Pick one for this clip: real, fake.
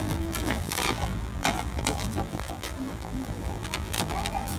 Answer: fake